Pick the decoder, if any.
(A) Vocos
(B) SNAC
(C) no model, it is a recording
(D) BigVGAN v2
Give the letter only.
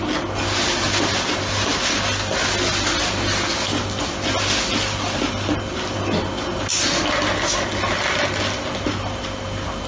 C